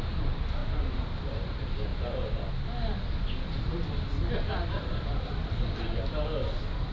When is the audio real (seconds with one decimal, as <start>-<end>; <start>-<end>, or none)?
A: 0.0-6.9